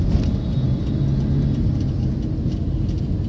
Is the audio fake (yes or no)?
no